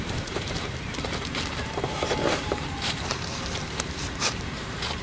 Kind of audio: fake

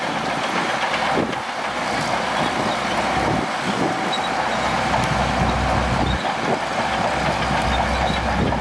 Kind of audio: real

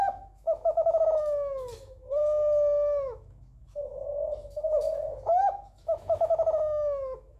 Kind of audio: fake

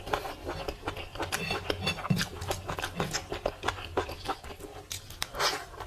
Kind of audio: real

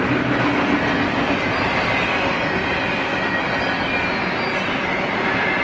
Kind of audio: real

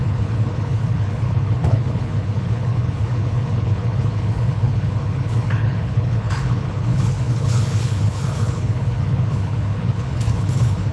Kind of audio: fake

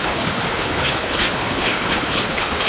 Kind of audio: fake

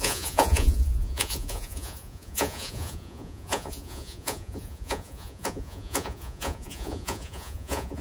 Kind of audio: fake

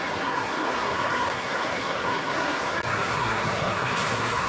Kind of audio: fake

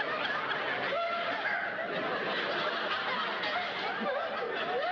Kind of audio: real